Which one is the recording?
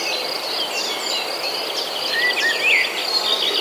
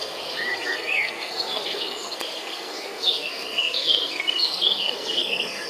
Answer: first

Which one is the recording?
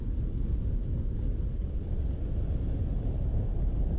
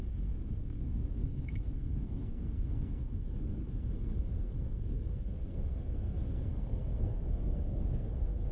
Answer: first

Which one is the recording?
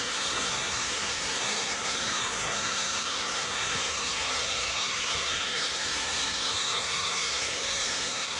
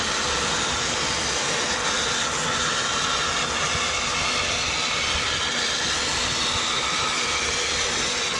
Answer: second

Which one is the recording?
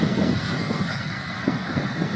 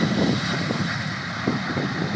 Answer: second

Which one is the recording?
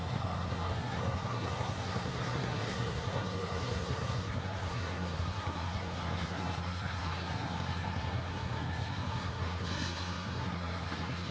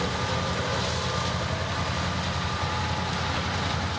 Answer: second